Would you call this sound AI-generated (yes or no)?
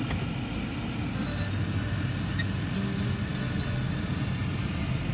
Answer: no